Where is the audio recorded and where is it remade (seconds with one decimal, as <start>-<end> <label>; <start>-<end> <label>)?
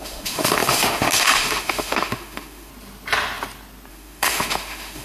0.0-2.7 remade; 2.7-3.9 recorded; 3.9-5.0 remade